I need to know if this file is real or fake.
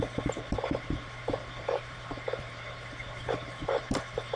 fake